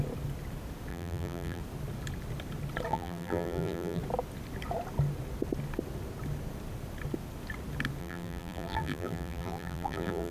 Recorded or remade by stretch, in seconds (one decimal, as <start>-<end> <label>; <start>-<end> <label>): 0.0-0.9 recorded; 0.9-1.6 remade; 1.6-2.9 recorded; 2.9-4.0 remade; 4.0-8.0 recorded; 8.0-10.3 remade